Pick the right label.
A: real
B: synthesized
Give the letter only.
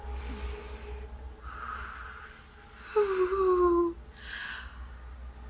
A